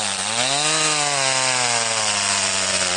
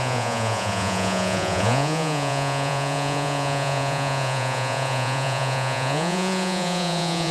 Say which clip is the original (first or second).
first